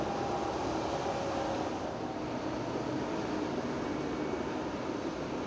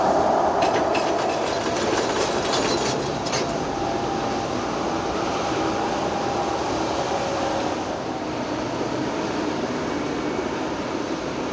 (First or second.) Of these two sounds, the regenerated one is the second